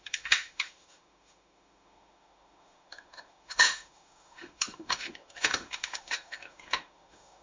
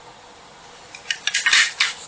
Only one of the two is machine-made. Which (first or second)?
first